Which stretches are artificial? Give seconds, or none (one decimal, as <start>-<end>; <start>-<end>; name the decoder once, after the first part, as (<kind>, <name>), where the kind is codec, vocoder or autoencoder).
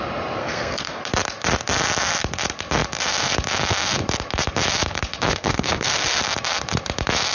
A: 0.4-1.0 (codec, SNAC); 5.3-6.2